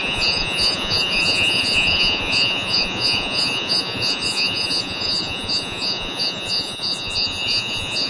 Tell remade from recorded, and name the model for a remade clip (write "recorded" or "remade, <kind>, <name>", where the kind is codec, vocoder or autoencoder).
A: remade, vocoder, Vocos